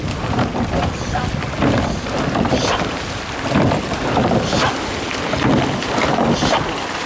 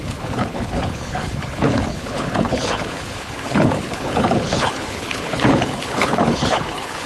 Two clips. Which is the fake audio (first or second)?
second